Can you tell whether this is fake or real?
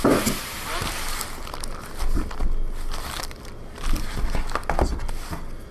real